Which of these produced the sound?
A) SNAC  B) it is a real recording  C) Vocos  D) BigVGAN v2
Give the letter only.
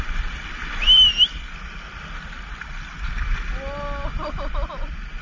B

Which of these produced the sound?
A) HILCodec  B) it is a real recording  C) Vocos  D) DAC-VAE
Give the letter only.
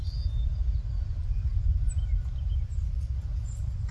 B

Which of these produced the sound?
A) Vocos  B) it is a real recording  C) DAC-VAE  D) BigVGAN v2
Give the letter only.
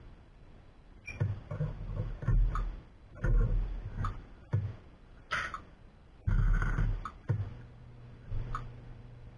B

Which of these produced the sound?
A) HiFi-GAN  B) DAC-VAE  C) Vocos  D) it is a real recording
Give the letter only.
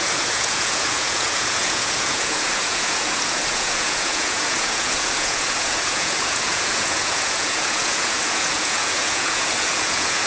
C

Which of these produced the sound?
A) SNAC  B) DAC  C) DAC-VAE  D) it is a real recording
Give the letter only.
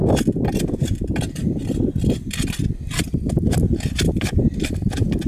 D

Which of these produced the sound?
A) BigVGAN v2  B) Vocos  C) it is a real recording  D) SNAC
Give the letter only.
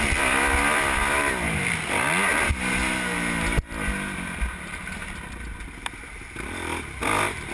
C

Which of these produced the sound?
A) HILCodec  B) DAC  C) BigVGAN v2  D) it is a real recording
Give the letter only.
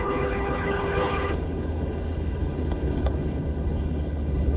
A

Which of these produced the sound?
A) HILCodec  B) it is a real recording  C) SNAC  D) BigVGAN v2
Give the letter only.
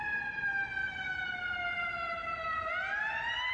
D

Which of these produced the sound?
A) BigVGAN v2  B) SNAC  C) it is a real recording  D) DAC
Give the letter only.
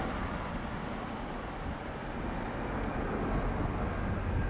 C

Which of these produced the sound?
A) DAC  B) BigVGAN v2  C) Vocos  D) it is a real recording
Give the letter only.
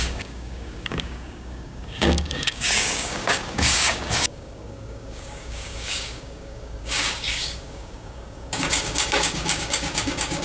A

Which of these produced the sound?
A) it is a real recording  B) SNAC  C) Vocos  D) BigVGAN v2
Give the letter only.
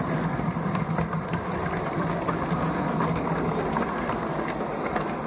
A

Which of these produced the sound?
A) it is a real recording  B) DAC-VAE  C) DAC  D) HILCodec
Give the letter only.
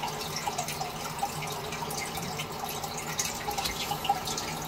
A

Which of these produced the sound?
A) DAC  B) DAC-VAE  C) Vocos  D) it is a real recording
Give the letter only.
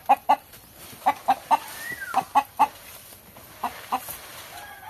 D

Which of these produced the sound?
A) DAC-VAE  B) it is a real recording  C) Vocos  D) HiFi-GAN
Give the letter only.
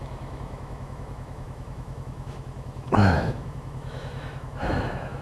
A